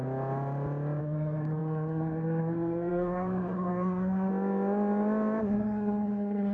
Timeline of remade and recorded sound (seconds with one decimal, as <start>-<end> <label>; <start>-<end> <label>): 0.0-1.0 recorded; 1.0-4.3 remade; 4.3-5.4 recorded; 5.4-6.5 remade